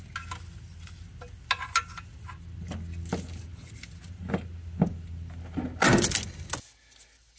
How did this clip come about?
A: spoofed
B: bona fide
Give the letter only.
B